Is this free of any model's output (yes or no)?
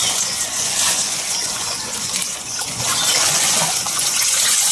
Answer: no